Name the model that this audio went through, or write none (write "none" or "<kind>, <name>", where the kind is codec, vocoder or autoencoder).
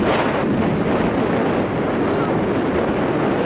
none